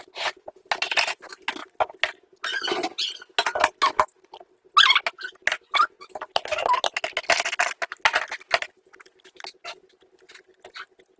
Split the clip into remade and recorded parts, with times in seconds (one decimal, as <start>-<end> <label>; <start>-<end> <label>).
0.0-11.2 recorded